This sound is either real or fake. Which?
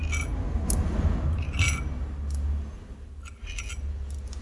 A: real